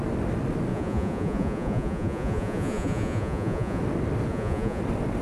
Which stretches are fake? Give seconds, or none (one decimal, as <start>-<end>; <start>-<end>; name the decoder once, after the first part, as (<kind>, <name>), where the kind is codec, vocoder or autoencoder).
0.7-3.8 (vocoder, Vocos); 4.3-4.8